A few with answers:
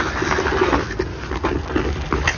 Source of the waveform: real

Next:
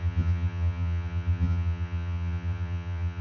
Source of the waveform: fake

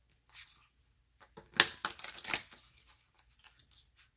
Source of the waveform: real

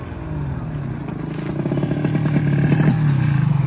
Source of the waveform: real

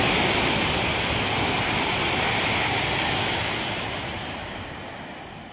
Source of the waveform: real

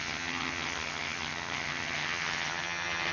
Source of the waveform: fake